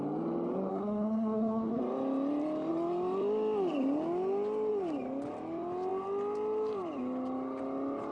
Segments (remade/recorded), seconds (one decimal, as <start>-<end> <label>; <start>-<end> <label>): 0.0-0.7 recorded; 0.7-1.8 remade; 1.8-8.1 recorded